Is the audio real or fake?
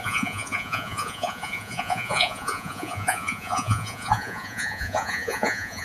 fake